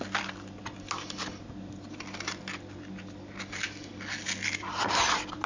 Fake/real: real